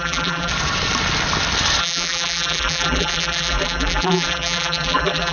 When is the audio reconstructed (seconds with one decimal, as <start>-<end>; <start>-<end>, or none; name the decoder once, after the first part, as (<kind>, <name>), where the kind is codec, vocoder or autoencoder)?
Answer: 0.0-0.5 (vocoder, BigVGAN v2); 1.8-5.3